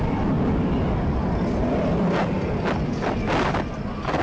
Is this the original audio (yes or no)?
yes